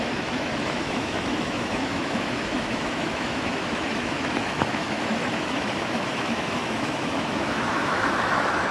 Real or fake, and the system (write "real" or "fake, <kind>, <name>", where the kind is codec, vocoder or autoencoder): fake, autoencoder, DAC-VAE